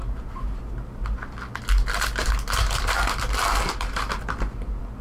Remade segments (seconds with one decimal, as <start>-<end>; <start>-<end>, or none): 0.0-0.7; 3.5-4.1